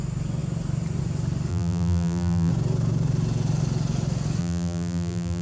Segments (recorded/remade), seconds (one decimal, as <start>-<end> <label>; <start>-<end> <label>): 0.0-1.5 recorded; 1.5-2.5 remade; 2.5-4.4 recorded; 4.4-5.4 remade